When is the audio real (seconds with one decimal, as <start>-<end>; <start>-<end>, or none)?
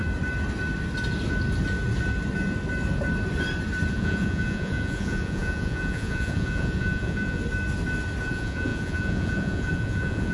0.0-3.9; 7.4-8.2